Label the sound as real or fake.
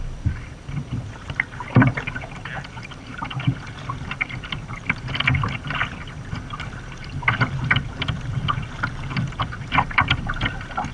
fake